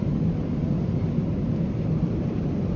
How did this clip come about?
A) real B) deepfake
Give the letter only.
A